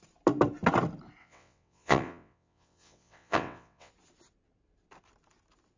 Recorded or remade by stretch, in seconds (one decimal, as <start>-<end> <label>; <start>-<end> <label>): 0.0-1.2 recorded; 1.2-3.9 remade; 3.9-5.8 recorded